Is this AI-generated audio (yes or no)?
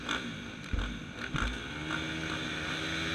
no